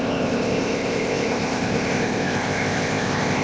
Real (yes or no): no